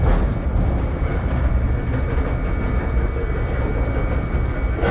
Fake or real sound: real